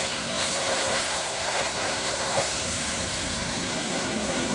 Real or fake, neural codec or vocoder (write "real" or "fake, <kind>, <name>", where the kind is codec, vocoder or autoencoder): fake, codec, SNAC